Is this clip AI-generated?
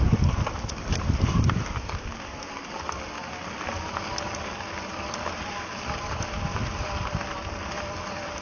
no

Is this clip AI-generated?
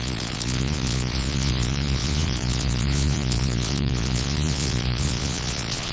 yes